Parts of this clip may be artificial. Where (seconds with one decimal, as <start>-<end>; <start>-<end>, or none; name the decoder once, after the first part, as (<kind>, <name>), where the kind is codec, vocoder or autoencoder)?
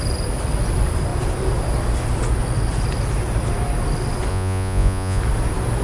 4.3-5.2 (vocoder, Vocos)